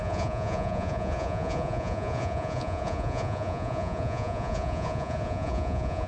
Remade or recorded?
remade